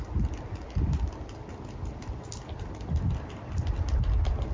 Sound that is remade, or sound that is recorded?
recorded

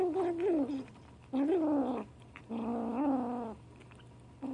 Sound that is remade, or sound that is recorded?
remade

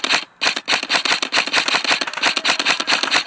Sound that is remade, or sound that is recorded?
recorded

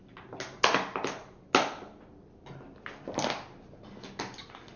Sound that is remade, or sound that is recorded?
recorded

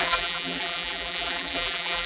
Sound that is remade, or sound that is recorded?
remade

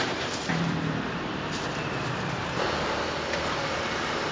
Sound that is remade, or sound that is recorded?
remade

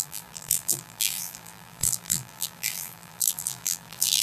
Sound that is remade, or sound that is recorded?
remade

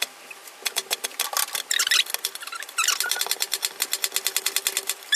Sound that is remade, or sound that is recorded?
recorded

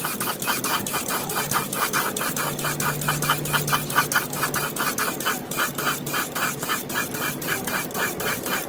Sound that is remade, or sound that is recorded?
recorded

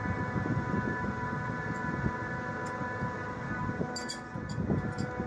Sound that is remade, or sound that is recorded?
remade